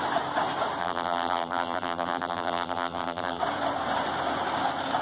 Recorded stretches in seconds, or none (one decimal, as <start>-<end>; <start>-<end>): 0.0-0.8; 3.4-5.0